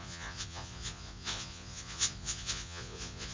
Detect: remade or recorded remade